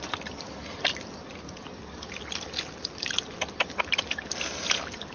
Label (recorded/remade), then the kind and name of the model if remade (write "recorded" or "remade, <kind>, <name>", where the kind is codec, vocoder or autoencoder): recorded